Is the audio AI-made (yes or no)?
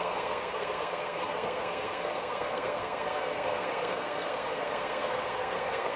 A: yes